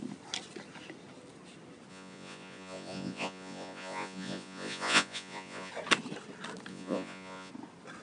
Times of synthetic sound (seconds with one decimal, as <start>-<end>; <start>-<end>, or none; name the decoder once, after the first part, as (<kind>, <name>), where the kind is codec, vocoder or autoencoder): 1.9-5.7 (vocoder, Vocos); 6.7-7.5